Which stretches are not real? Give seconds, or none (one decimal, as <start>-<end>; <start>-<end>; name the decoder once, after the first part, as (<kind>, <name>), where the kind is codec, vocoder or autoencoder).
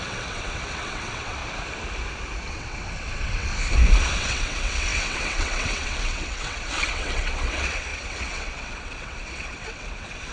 0.0-1.4 (vocoder, WaveNeXt); 2.5-3.5; 4.2-10.3